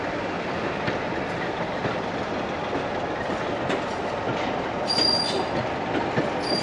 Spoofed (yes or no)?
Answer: no